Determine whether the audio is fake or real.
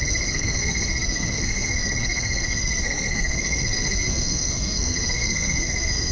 fake